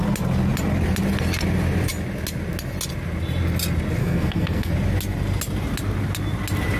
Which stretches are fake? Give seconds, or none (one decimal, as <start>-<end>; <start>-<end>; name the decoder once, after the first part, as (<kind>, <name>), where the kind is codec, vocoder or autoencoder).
4.0-4.7 (codec, SNAC)